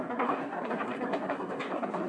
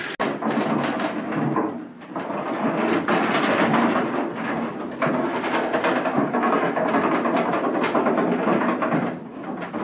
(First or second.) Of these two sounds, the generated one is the first